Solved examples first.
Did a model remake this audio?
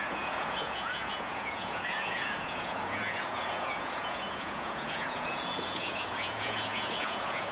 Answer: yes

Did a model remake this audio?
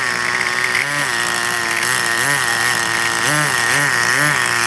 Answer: no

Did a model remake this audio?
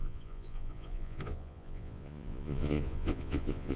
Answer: yes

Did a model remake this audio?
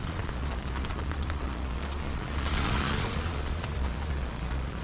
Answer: yes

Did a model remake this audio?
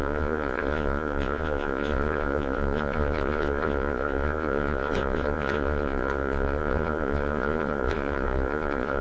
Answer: yes